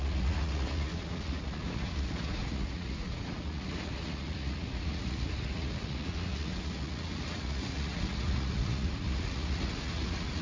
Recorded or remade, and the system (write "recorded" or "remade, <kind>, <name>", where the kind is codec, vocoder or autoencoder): remade, vocoder, Vocos